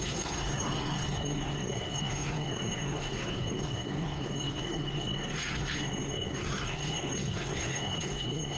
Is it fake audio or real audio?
fake